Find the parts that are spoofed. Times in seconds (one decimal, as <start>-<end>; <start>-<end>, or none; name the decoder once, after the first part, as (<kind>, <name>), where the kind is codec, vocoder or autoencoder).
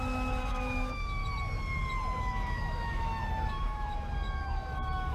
0.0-1.2 (autoencoder, DAC-VAE); 2.2-5.1